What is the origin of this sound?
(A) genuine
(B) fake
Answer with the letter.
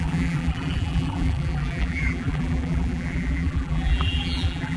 B